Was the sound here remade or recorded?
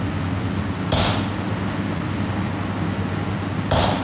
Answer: recorded